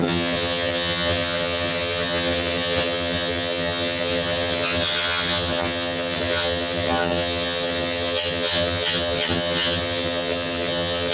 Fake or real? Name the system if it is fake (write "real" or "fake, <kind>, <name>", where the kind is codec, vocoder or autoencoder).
fake, vocoder, HiFi-GAN